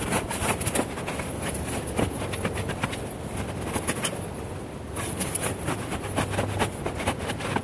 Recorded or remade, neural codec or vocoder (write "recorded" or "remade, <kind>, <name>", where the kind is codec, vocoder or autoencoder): recorded